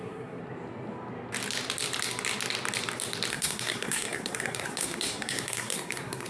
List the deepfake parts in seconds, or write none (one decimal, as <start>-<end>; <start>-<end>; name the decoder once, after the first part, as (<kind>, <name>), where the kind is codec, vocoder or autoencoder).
0.0-0.4 (codec, SNAC); 3.3-6.3